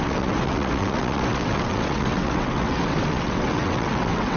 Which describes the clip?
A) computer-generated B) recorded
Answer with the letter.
A